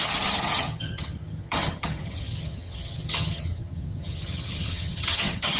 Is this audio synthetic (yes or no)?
yes